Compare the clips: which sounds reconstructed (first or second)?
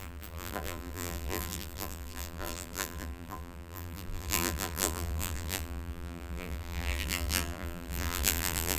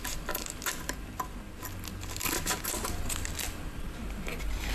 first